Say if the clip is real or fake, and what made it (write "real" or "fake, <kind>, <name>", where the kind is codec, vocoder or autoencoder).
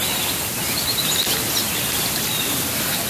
real